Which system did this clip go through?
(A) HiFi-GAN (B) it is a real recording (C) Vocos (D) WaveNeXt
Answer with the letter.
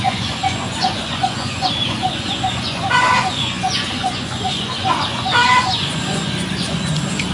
C